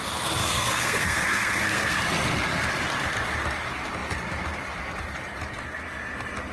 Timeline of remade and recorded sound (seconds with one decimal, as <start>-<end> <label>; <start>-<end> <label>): 0.0-0.4 recorded; 0.4-2.0 remade; 2.0-6.5 recorded